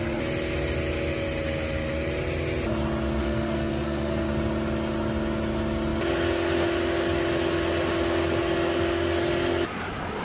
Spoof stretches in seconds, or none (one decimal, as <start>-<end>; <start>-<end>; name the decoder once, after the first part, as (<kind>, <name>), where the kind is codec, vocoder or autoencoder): 3.2-4.3 (codec, SNAC)